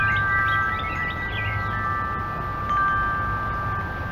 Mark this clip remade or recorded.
recorded